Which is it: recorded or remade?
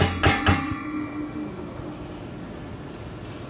recorded